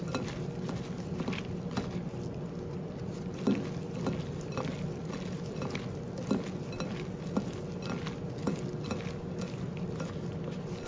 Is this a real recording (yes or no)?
yes